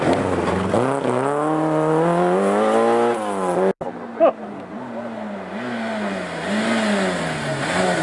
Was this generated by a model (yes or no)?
no